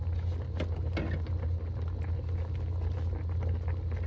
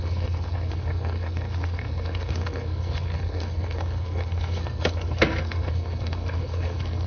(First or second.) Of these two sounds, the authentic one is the first